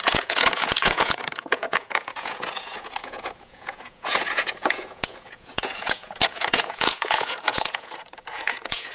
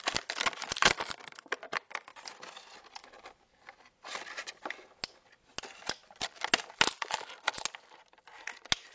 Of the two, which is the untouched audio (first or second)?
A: second